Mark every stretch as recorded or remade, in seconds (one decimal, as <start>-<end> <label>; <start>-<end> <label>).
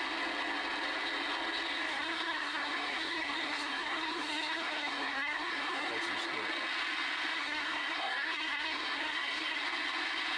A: 0.0-1.9 recorded; 1.9-5.9 remade; 5.9-7.3 recorded; 7.3-9.6 remade; 9.6-10.4 recorded